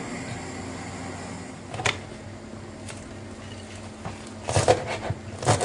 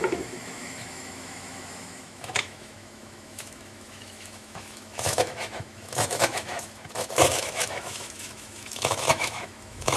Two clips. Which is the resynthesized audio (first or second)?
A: second